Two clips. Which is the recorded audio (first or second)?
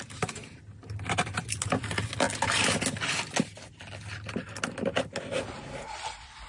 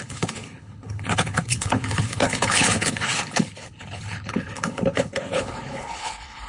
first